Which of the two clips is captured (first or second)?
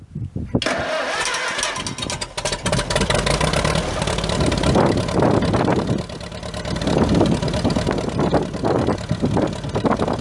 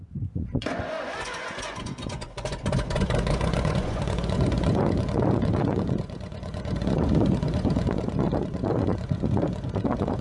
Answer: first